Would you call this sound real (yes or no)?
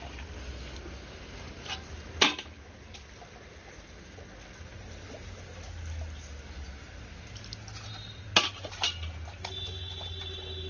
yes